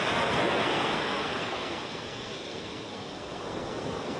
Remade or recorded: remade